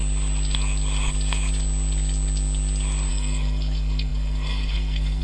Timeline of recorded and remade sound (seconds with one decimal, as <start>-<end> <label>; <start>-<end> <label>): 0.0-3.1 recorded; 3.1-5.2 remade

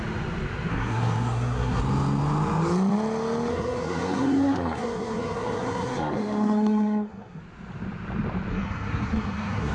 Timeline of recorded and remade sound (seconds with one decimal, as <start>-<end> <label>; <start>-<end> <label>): 0.0-0.7 recorded; 0.7-1.8 remade; 1.8-3.5 recorded; 3.5-7.4 remade; 7.4-8.5 recorded; 8.5-9.7 remade

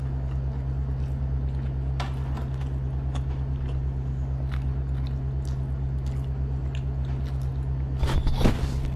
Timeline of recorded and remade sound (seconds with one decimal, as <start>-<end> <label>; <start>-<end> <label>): 0.0-9.0 recorded